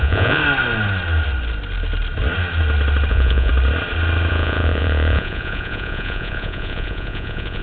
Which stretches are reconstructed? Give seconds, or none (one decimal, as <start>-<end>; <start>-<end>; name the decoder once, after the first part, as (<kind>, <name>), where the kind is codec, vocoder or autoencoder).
0.0-0.4 (vocoder, Vocos); 3.1-3.5; 4.3-7.6